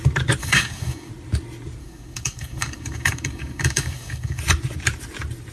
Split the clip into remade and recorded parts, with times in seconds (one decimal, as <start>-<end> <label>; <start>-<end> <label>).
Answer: 0.0-0.4 recorded; 0.4-1.1 remade; 1.1-1.8 recorded; 1.8-4.4 remade; 4.4-5.5 recorded